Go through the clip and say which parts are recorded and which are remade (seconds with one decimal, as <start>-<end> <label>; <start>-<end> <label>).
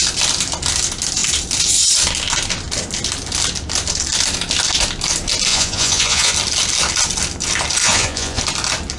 0.0-5.5 recorded; 5.5-6.3 remade; 6.3-7.8 recorded; 7.8-8.4 remade; 8.4-9.0 recorded